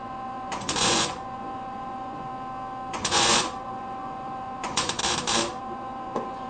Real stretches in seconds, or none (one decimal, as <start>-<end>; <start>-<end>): 2.3-2.9; 5.0-5.6